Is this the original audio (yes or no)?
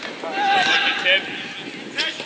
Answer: yes